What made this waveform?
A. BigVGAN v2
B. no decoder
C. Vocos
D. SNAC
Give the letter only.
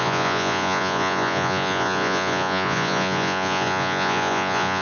C